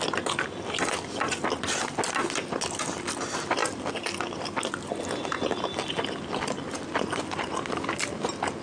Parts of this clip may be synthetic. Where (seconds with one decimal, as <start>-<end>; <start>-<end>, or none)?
none